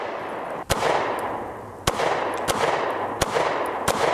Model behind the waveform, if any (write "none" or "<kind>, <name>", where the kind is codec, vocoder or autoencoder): none